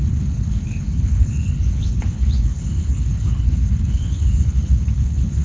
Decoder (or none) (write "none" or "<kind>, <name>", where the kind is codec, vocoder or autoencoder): codec, HILCodec